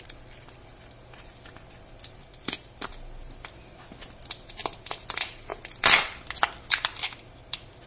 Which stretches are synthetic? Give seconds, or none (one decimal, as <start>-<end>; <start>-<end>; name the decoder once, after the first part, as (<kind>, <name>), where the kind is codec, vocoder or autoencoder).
2.2-2.9 (vocoder, BigVGAN v2)